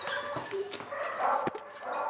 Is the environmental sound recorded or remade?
recorded